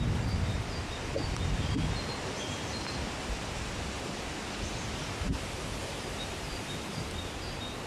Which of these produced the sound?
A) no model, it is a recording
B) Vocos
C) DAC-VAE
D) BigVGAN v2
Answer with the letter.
A